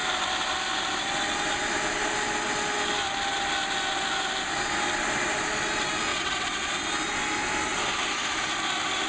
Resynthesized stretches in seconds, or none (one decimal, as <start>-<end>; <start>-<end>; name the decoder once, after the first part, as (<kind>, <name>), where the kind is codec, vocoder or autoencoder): 6.1-6.6 (vocoder, WaveNeXt)